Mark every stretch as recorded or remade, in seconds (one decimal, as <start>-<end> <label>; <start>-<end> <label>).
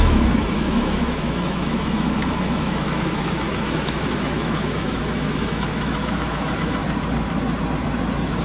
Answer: 0.0-6.8 remade; 6.8-8.4 recorded